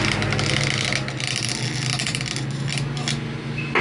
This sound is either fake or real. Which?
real